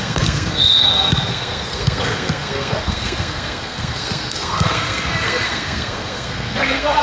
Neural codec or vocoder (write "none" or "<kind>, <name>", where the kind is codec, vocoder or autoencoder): codec, SNAC